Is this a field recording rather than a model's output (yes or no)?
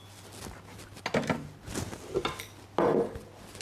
yes